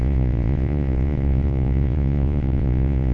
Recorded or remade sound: remade